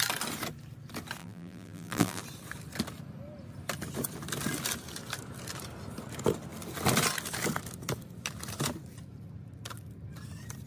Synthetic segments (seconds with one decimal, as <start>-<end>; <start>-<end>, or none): 1.2-2.2